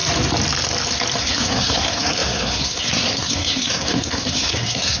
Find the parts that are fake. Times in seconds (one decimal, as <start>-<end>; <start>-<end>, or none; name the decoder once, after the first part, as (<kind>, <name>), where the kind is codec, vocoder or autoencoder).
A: 1.2-5.0 (codec, SNAC)